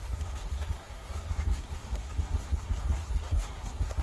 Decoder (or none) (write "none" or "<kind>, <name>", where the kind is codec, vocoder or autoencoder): codec, SNAC